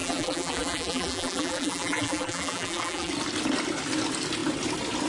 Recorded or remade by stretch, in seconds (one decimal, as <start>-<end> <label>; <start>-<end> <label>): 0.0-3.1 remade; 3.1-5.1 recorded